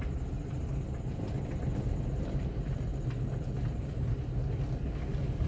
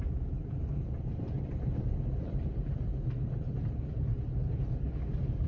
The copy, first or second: second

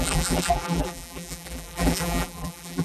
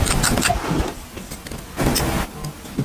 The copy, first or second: first